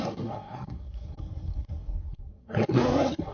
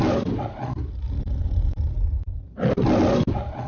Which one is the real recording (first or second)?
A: second